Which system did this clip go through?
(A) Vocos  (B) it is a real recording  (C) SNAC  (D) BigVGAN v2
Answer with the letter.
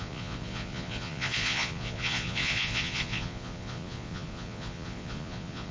A